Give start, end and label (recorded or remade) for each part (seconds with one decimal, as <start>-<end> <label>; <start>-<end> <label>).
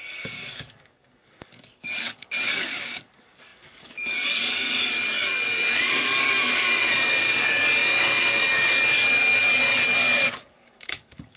0.0-11.4 remade